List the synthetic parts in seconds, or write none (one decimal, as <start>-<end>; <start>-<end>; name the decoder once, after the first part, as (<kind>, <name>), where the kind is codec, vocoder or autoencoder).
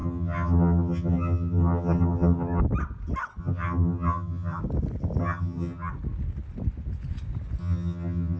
0.0-2.6 (vocoder, HiFi-GAN); 3.4-4.6; 5.2-5.9; 7.6-8.4